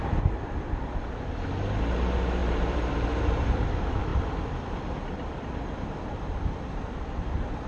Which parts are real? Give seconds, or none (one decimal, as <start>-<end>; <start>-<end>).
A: 0.0-2.4; 3.5-7.7